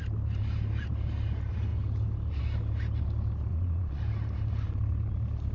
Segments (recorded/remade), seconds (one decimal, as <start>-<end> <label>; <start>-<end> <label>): 0.0-3.5 recorded; 3.5-4.0 remade; 4.0-5.5 recorded

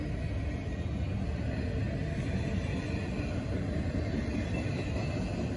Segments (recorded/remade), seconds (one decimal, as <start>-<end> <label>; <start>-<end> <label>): 0.0-5.6 recorded

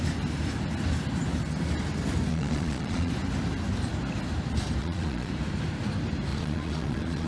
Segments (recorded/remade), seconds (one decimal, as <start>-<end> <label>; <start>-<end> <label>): 0.0-2.3 recorded; 2.3-3.1 remade; 3.1-4.8 recorded; 4.8-5.3 remade; 5.3-6.3 recorded; 6.3-7.3 remade

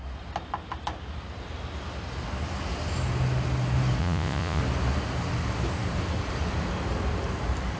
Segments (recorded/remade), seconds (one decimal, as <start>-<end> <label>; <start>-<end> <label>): 0.0-4.0 recorded; 4.0-4.6 remade; 4.6-7.8 recorded